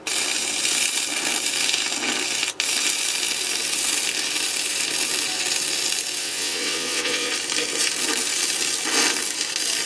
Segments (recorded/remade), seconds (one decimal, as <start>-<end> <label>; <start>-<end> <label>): 0.0-6.2 recorded; 6.2-7.3 remade; 7.3-9.9 recorded